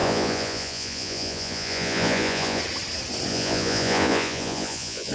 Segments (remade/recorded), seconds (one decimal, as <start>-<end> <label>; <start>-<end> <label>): 0.0-2.6 remade; 2.6-3.3 recorded; 3.3-5.1 remade

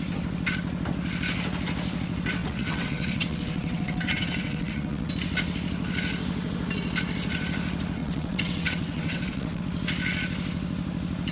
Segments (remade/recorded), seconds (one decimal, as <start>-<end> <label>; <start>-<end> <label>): 0.0-2.4 recorded; 2.4-5.1 remade; 5.1-8.0 recorded; 8.0-9.6 remade; 9.6-11.3 recorded

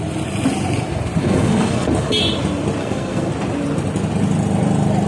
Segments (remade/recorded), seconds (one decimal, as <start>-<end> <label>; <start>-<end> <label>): 0.0-1.2 recorded; 1.2-1.9 remade; 1.9-2.8 recorded; 2.8-3.3 remade; 3.3-5.1 recorded

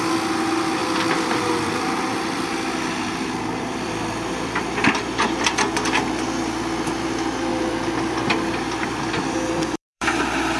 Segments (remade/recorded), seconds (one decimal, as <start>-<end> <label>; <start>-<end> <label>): 0.0-0.8 recorded; 0.8-4.9 remade; 4.9-7.5 recorded; 7.5-10.2 remade; 10.2-10.6 recorded

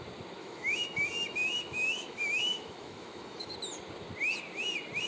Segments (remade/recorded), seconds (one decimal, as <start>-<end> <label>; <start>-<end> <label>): 0.0-0.4 recorded; 0.4-3.5 remade; 3.5-5.1 recorded

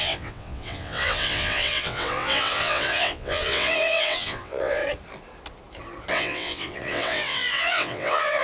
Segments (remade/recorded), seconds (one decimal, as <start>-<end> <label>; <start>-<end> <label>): 0.0-4.8 remade; 4.8-6.1 recorded; 6.1-8.4 remade

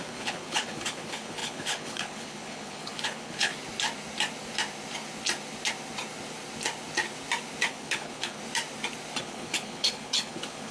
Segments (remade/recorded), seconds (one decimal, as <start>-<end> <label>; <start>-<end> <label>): 0.0-3.5 remade; 3.5-7.7 recorded; 7.7-8.4 remade; 8.4-9.2 recorded; 9.2-10.7 remade

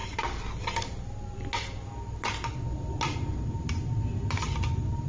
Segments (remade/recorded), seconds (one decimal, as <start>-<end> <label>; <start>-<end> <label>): 0.0-5.1 recorded